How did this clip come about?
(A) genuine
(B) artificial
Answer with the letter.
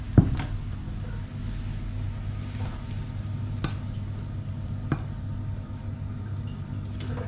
A